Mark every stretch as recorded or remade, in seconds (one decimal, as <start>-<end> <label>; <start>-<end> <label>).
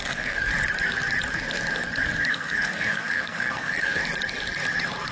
0.0-0.5 remade; 0.5-2.3 recorded; 2.3-4.0 remade; 4.0-5.1 recorded